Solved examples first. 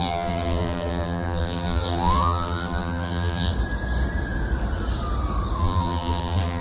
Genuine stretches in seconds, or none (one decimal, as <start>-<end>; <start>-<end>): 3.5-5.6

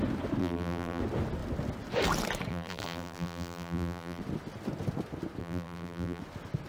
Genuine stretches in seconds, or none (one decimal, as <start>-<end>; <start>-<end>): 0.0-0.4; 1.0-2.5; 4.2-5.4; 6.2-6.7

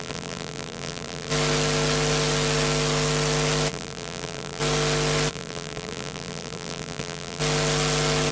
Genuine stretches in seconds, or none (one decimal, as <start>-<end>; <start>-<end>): 1.3-3.7; 4.6-5.3; 7.4-8.3

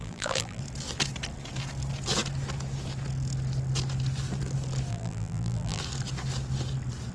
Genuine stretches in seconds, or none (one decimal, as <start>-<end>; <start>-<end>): 0.6-4.9; 5.8-7.1

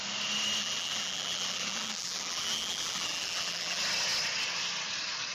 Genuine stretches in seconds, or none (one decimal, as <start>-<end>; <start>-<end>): 0.0-0.6; 3.8-5.3

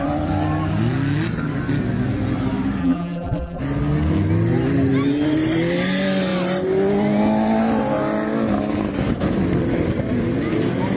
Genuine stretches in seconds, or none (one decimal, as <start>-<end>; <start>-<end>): 0.0-2.8; 3.6-11.0

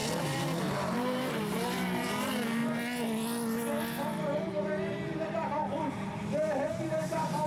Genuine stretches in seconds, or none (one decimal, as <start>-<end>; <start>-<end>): 0.0-0.6; 2.6-4.6